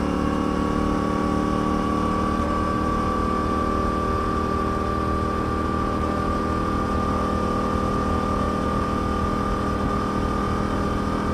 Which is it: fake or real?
real